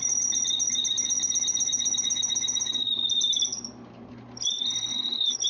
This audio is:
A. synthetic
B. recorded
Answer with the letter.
B